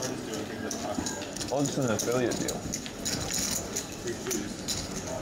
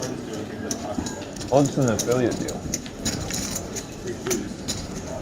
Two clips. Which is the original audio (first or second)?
first